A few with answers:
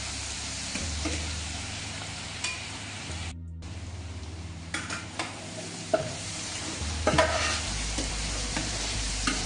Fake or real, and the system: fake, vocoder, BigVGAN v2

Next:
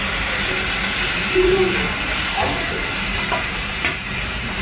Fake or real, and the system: fake, vocoder, BigVGAN v2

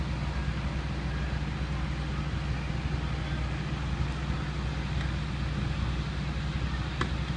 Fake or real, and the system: real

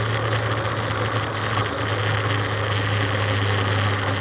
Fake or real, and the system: real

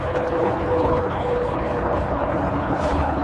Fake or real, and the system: fake, codec, HILCodec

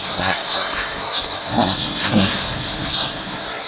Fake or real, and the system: fake, codec, SNAC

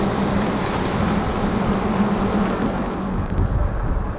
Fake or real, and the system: real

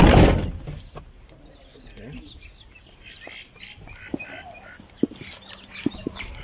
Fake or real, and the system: real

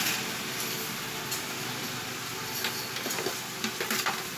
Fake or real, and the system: real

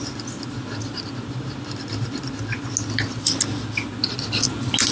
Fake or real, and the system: real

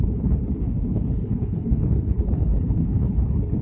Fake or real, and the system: fake, codec, HILCodec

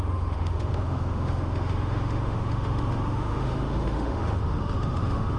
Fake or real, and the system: fake, autoencoder, DAC-VAE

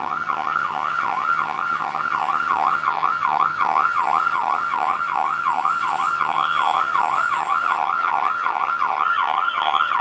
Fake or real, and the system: fake, vocoder, HiFi-GAN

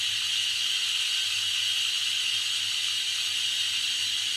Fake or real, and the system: real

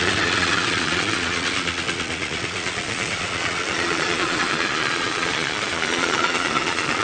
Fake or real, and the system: fake, vocoder, Vocos